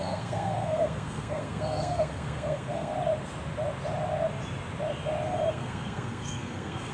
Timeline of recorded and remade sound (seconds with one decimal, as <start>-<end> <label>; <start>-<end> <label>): 0.0-2.9 remade; 2.9-5.5 recorded; 5.5-6.9 remade